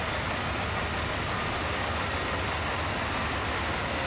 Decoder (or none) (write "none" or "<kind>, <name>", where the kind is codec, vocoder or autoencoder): none